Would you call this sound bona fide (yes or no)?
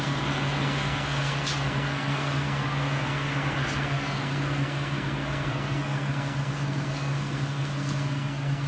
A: no